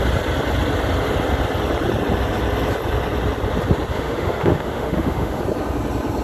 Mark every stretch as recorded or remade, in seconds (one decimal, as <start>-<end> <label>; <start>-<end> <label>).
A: 0.0-3.9 recorded; 3.9-5.4 remade; 5.4-6.2 recorded